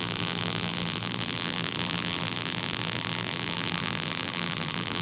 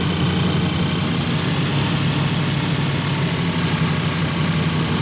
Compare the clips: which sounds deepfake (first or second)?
first